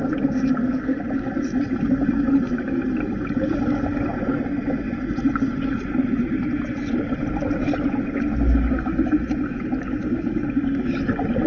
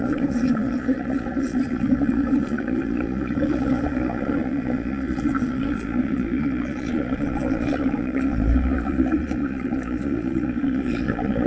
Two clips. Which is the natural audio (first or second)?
first